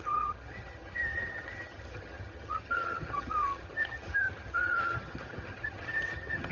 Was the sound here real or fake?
fake